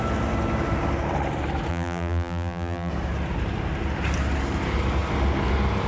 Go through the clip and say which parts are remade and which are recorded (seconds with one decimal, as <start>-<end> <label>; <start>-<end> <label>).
0.0-1.7 recorded; 1.7-2.9 remade; 2.9-5.9 recorded